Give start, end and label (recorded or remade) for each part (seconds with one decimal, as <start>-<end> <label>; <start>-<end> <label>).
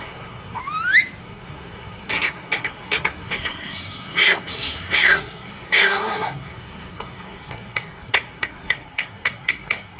0.0-0.6 remade; 0.6-1.2 recorded; 1.2-10.0 remade